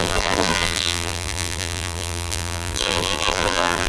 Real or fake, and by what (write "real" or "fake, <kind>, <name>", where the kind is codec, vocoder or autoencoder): fake, vocoder, BigVGAN v2